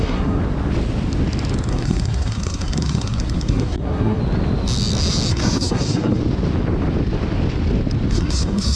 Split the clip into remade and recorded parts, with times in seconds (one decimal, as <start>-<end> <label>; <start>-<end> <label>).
0.0-0.4 remade; 0.4-1.7 recorded; 1.7-4.2 remade; 4.2-5.3 recorded; 5.3-6.2 remade; 6.2-8.1 recorded; 8.1-8.8 remade